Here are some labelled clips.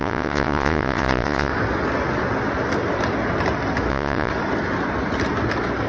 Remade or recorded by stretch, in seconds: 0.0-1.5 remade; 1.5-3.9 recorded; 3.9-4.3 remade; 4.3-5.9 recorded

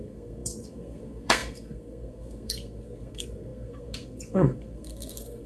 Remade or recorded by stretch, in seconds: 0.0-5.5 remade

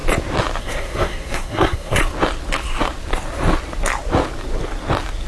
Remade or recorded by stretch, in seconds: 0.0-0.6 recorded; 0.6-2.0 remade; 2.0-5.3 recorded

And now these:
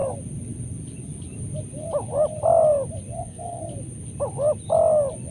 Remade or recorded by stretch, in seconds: 0.0-3.2 recorded; 3.2-3.6 remade; 3.6-5.3 recorded

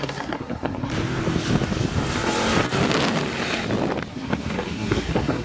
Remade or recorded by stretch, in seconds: 0.0-0.9 remade; 0.9-4.1 recorded; 4.1-5.4 remade

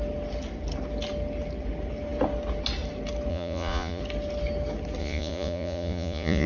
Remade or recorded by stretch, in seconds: 0.0-3.3 recorded; 3.3-4.0 remade; 4.0-5.0 recorded; 5.0-6.5 remade

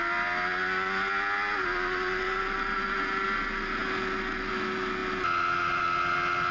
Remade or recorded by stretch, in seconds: 0.0-6.5 recorded

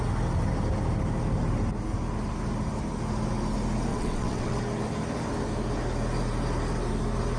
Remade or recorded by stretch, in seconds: 0.0-3.9 recorded; 3.9-4.6 remade; 4.6-7.4 recorded